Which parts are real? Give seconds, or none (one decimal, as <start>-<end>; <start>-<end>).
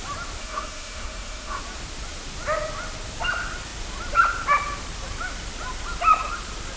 0.0-0.4; 1.6-6.8